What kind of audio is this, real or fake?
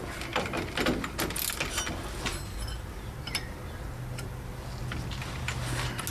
real